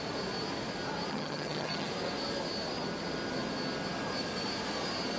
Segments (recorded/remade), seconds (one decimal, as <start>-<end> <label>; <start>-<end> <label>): 0.0-1.1 recorded; 1.1-1.9 remade; 1.9-5.2 recorded